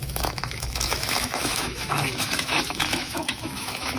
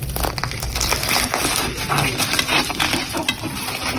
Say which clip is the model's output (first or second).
first